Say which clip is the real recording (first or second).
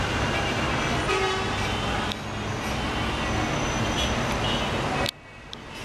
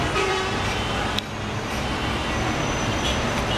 first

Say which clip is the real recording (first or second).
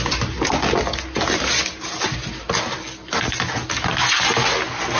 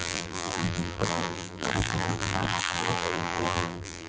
first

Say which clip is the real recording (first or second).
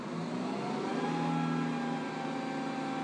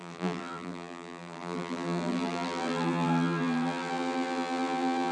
first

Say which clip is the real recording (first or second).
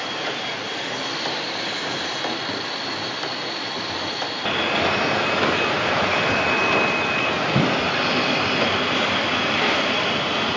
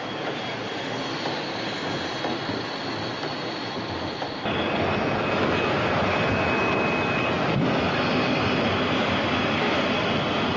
second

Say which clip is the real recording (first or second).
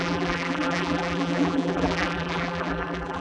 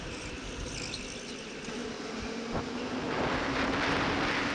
second